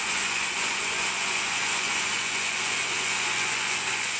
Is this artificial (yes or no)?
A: yes